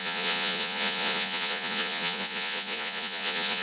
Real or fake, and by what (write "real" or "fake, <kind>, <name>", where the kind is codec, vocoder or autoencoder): fake, vocoder, Vocos